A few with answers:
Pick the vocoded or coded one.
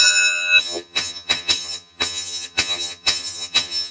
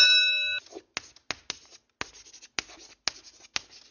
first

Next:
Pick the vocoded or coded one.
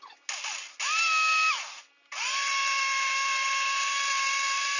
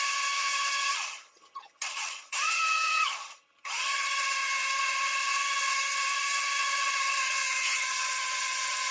second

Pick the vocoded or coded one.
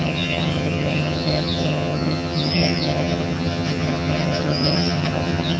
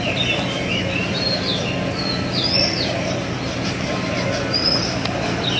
first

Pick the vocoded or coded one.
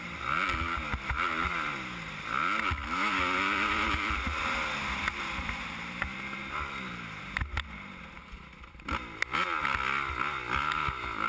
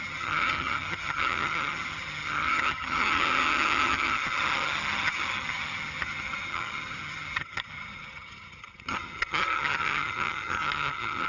second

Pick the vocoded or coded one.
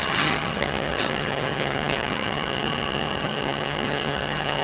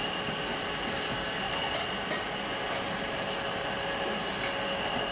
first